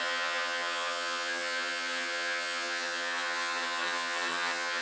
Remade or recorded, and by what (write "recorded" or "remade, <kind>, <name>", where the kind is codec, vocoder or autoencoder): remade, vocoder, HiFi-GAN